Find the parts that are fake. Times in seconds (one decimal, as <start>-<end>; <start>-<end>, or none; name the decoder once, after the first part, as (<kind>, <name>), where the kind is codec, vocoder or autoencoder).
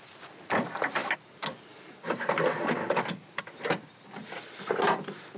2.8-3.4 (codec, DAC)